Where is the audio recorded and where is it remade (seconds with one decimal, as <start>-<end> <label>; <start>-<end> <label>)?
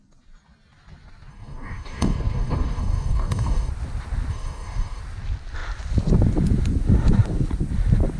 0.0-1.3 recorded; 1.3-3.7 remade; 3.7-4.3 recorded; 4.3-5.0 remade; 5.0-8.2 recorded